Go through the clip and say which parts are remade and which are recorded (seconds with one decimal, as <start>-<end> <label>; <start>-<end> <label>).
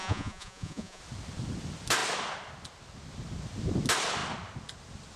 0.0-1.0 remade; 1.0-5.2 recorded